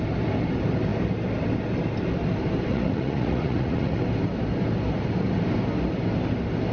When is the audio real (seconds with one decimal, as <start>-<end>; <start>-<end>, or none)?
0.0-2.7; 4.0-6.7